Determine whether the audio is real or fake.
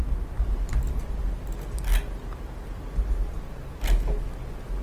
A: real